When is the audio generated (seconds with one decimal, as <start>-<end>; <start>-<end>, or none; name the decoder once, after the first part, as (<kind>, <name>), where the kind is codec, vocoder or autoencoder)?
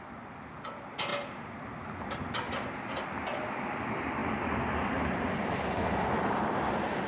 none